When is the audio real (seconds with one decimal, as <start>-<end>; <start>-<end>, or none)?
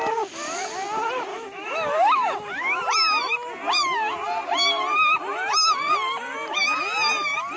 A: 0.0-1.3; 2.8-7.6